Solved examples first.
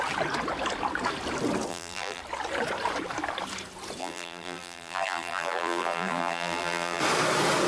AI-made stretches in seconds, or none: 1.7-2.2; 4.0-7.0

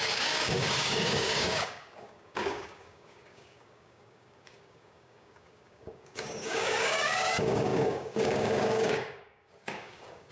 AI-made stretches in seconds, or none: 0.0-10.3

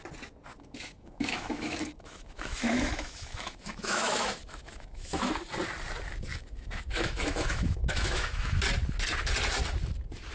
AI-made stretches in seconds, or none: 0.5-5.3; 6.3-8.6

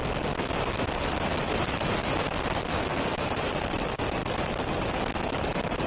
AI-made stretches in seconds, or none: 2.9-3.5; 4.2-4.9

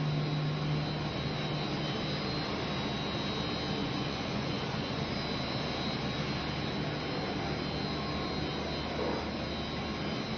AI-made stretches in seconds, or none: 3.8-5.1

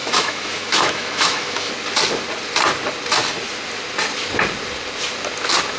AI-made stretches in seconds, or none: 0.0-1.7